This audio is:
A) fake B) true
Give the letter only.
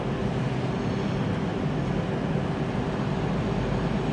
B